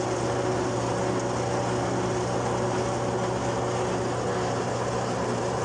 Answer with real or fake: real